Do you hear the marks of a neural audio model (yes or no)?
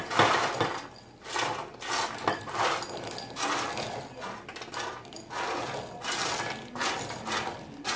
no